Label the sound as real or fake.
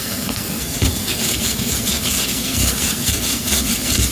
fake